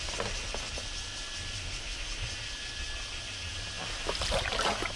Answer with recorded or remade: recorded